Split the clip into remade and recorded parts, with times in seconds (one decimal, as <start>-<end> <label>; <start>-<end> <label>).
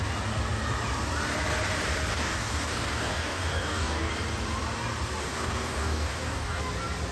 0.0-2.1 recorded; 2.1-4.1 remade; 4.1-5.2 recorded; 5.2-6.6 remade; 6.6-7.1 recorded